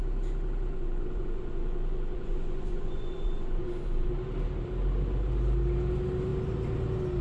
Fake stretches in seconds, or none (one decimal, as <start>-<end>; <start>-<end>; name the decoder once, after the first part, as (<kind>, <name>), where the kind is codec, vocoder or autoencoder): 0.7-4.1 (vocoder, Vocos)